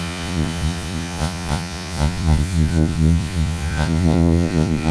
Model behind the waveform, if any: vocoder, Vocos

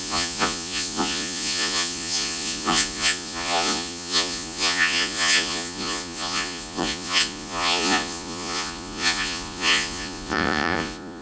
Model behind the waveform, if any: vocoder, Vocos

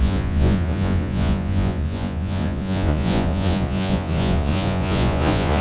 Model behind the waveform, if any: vocoder, Vocos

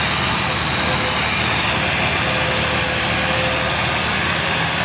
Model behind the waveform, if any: none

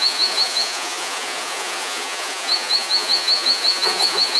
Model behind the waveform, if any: vocoder, Vocos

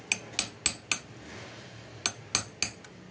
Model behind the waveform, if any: none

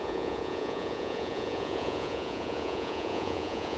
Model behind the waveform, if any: vocoder, Vocos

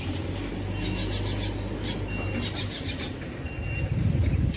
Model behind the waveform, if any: none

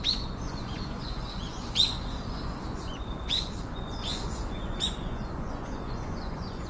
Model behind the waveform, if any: vocoder, Vocos